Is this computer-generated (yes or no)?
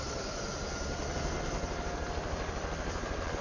no